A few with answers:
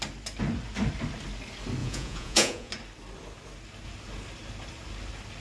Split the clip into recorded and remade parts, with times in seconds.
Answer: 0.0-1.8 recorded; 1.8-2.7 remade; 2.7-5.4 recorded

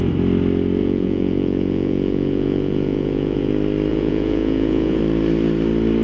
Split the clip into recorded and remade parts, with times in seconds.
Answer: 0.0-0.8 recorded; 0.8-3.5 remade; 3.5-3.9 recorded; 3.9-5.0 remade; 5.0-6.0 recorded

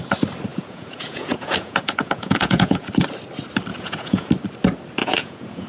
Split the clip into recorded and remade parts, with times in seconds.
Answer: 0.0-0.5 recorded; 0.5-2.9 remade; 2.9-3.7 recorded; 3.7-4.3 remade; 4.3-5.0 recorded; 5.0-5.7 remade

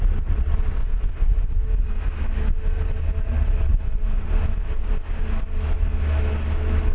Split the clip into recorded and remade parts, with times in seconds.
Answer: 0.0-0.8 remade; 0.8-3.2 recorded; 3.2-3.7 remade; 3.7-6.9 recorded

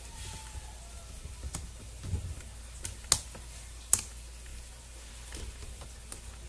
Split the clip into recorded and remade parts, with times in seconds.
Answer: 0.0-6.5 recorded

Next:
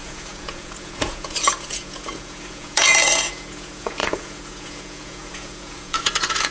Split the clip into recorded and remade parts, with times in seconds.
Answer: 0.0-6.5 remade

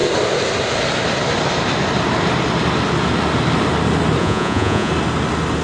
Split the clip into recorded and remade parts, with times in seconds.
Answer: 0.0-4.2 recorded; 4.2-4.9 remade; 4.9-5.6 recorded